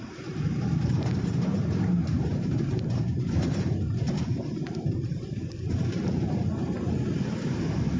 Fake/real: fake